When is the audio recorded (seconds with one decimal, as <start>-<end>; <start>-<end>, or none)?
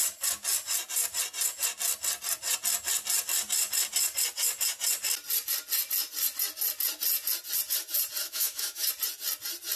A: 0.0-8.2; 8.9-9.8